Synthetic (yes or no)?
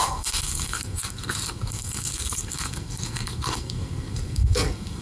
yes